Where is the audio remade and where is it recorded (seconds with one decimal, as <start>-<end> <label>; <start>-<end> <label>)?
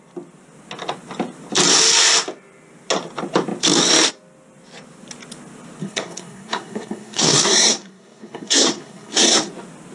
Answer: 0.0-5.8 recorded; 5.8-9.5 remade; 9.5-9.9 recorded